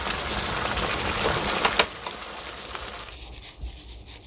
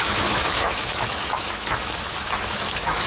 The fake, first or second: second